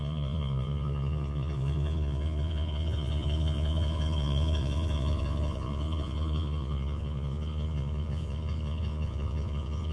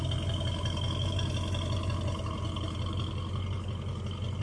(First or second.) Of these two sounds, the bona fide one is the second